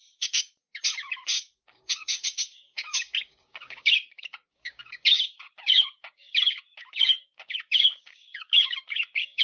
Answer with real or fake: fake